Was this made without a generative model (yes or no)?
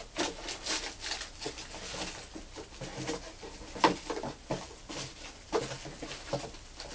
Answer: yes